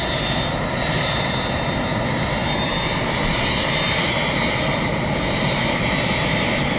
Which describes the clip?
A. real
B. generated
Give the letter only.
A